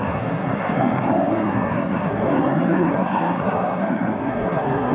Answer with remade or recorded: remade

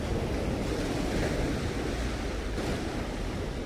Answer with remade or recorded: recorded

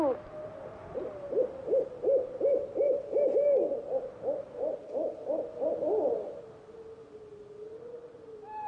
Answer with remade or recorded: recorded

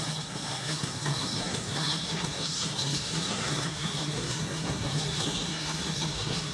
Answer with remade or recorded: remade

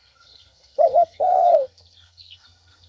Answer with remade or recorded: remade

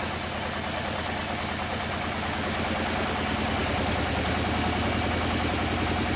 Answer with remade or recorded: recorded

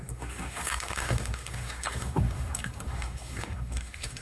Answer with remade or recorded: remade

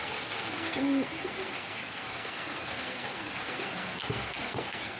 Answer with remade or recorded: remade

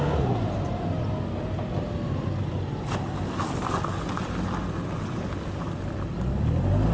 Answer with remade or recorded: recorded